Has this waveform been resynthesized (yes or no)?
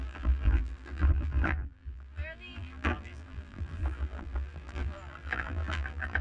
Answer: yes